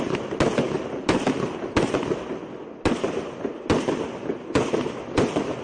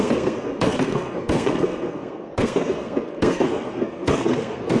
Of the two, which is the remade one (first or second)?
second